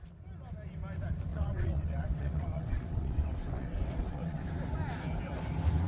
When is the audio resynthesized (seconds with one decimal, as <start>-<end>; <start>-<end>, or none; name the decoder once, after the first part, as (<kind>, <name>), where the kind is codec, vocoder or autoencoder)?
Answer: 1.3-4.4 (vocoder, WaveNeXt)

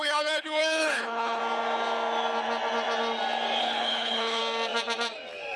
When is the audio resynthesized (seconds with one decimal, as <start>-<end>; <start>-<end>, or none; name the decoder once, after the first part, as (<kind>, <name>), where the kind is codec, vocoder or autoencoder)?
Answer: 0.0-1.4 (codec, HILCodec); 3.6-4.4